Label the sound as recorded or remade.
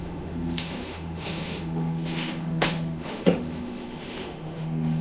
remade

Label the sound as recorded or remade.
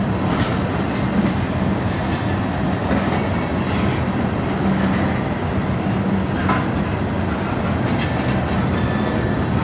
recorded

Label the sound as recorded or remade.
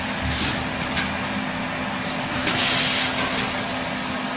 recorded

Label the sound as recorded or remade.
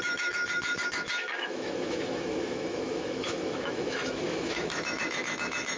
remade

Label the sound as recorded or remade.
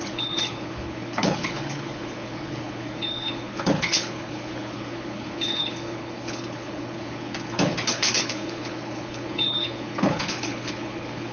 remade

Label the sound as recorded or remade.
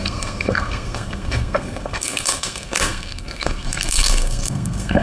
remade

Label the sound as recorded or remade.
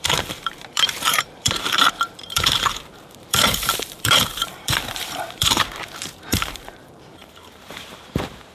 remade